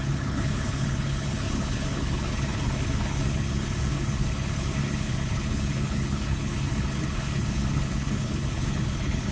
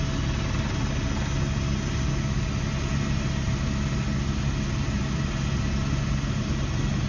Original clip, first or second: second